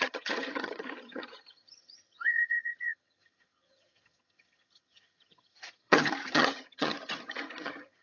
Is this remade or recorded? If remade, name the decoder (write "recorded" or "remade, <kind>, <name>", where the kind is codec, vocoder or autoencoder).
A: remade, vocoder, HiFi-GAN